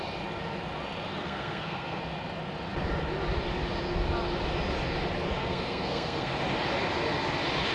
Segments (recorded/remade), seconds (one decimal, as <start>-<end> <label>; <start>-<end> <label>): 0.0-1.2 recorded; 1.2-2.0 remade; 2.0-5.4 recorded; 5.4-6.3 remade; 6.3-7.7 recorded